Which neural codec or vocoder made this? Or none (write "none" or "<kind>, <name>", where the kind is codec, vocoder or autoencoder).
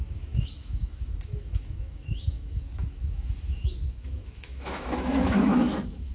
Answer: autoencoder, DAC-VAE